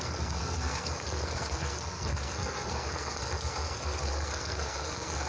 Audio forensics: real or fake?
fake